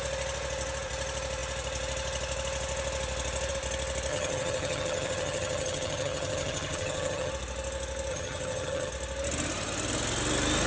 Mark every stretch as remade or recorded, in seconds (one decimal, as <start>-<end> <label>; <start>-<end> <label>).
0.0-4.1 recorded; 4.1-7.3 remade; 7.3-8.1 recorded; 8.1-8.9 remade; 8.9-10.7 recorded